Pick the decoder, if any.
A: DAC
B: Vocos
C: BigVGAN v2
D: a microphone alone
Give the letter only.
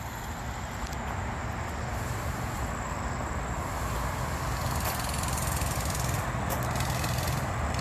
D